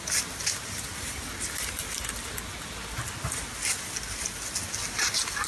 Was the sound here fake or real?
real